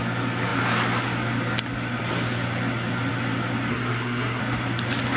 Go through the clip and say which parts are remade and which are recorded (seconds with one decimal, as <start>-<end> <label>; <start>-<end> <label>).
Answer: 0.0-3.7 recorded; 3.7-4.4 remade; 4.4-5.2 recorded